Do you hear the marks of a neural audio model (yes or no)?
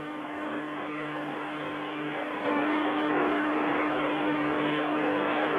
yes